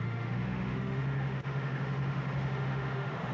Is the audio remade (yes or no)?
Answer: yes